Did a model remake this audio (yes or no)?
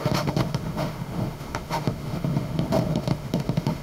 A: yes